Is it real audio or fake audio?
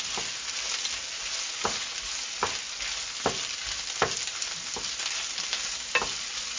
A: real